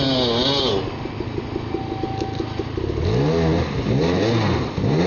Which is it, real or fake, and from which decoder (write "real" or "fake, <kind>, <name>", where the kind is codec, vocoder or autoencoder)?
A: real